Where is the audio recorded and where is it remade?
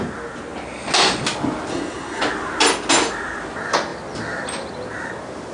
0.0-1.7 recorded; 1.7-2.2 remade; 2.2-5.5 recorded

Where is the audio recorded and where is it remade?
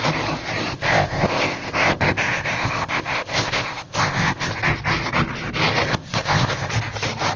0.0-0.7 recorded; 0.7-4.5 remade; 4.5-5.9 recorded; 5.9-6.7 remade; 6.7-7.4 recorded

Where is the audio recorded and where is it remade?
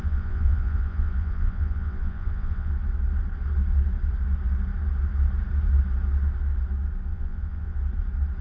0.0-2.7 remade; 2.7-7.1 recorded; 7.1-7.8 remade; 7.8-8.4 recorded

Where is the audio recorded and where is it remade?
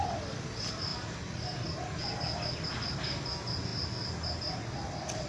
0.0-5.3 recorded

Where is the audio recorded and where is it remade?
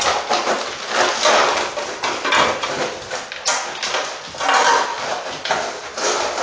0.0-6.4 recorded